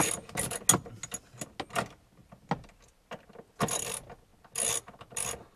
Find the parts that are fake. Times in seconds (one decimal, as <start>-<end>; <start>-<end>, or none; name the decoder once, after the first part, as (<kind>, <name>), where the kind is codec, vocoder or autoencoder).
none